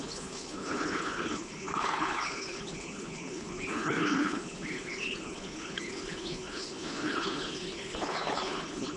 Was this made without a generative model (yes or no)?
no